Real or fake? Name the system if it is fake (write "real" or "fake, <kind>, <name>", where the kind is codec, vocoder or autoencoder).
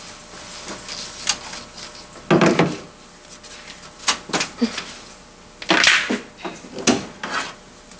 real